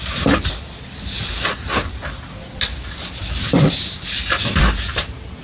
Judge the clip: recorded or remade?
recorded